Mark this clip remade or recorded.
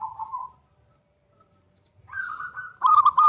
remade